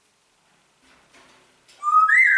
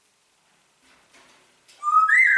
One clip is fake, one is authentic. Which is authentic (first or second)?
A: first